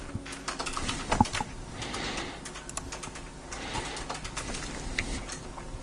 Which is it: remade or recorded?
recorded